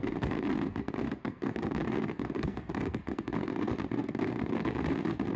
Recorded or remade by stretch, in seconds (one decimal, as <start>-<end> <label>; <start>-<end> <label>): 0.0-5.4 remade